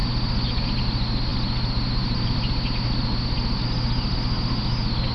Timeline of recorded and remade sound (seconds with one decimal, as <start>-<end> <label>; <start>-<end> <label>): 0.0-5.1 recorded